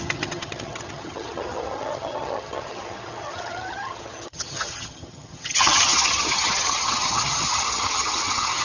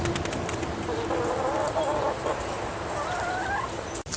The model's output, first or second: first